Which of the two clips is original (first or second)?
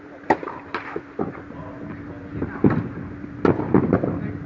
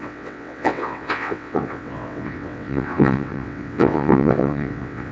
first